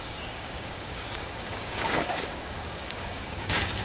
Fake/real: fake